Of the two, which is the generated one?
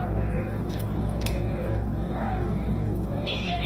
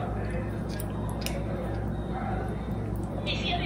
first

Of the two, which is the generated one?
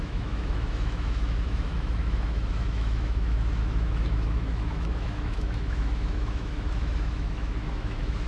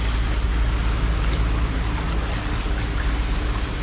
first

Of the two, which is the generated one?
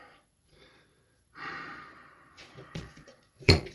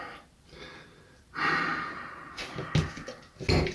first